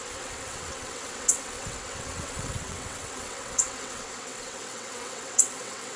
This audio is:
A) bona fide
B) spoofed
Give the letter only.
B